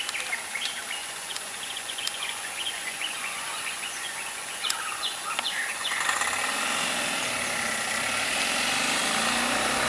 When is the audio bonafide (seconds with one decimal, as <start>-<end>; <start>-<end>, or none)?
0.0-1.0; 6.2-9.9